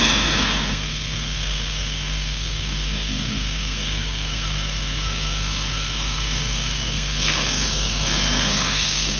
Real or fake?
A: fake